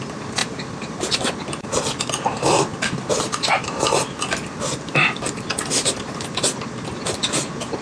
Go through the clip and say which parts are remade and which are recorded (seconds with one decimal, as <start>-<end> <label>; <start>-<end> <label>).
0.0-0.4 recorded; 0.4-1.3 remade; 1.3-7.8 recorded

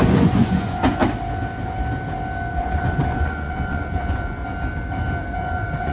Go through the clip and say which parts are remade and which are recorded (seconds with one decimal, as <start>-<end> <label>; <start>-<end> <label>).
0.0-1.0 remade; 1.0-2.5 recorded; 2.5-4.4 remade; 4.4-5.2 recorded; 5.2-5.9 remade

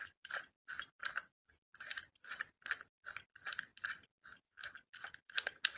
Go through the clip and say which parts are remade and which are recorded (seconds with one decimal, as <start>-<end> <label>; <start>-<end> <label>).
0.0-5.8 recorded

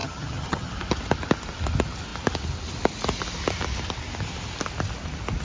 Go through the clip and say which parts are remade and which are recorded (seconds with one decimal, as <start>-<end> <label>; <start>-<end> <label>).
0.0-0.7 remade; 0.7-5.4 recorded

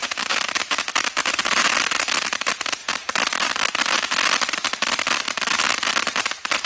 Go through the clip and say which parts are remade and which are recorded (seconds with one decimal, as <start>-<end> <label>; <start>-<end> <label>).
0.0-2.8 recorded; 2.8-3.7 remade; 3.7-6.7 recorded